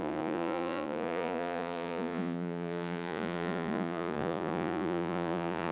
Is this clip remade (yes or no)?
yes